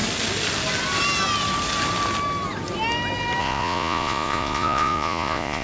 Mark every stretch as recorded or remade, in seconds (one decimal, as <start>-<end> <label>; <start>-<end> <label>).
0.0-3.4 recorded; 3.4-5.6 remade